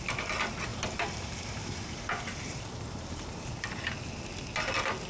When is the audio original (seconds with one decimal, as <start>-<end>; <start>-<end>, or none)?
0.0-0.7; 3.8-5.1

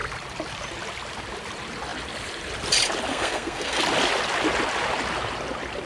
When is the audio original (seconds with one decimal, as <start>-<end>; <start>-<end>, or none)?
0.0-3.1; 3.8-5.9

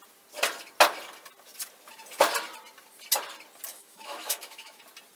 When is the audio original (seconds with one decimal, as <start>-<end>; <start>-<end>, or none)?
0.0-3.7; 4.8-5.2

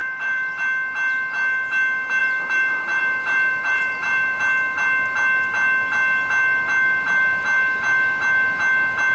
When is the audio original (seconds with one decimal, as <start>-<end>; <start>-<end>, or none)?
0.6-2.2; 4.4-9.1

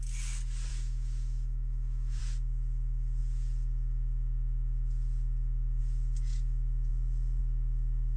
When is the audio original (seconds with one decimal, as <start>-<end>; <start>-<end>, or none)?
0.0-0.7; 2.2-8.2

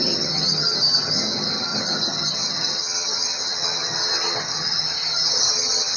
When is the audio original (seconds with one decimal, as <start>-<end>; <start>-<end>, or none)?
none

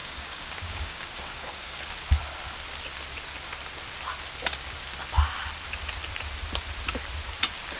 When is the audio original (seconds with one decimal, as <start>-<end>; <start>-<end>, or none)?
1.8-7.8